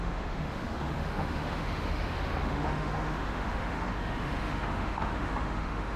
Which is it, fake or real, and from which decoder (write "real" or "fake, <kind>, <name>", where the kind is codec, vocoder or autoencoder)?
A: fake, autoencoder, DAC-VAE